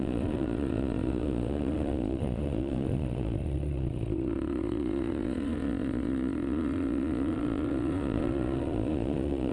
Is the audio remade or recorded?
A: remade